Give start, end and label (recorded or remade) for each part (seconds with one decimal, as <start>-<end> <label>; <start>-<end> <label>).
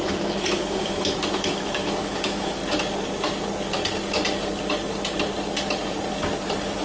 0.0-2.6 remade; 2.6-6.8 recorded